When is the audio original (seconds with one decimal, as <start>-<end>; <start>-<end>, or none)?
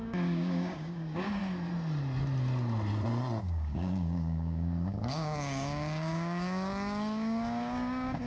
1.4-3.4